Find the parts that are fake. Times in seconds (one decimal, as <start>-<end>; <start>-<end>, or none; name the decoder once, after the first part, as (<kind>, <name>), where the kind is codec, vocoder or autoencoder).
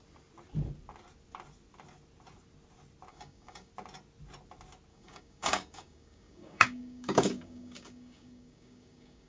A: 3.1-3.7 (codec, DAC); 4.9-9.3